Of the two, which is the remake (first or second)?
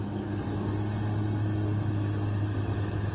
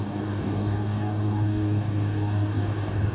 second